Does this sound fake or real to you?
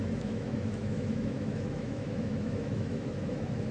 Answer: fake